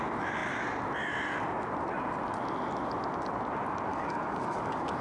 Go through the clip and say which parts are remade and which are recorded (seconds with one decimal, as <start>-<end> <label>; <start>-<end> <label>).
0.0-3.9 recorded; 3.9-5.0 remade